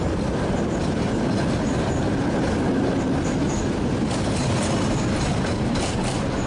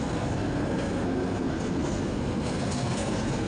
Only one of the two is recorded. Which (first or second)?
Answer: first